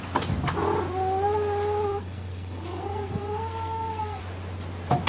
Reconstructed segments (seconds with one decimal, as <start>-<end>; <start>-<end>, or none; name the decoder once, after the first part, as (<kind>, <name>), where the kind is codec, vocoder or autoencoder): 1.9-4.2 (codec, SNAC)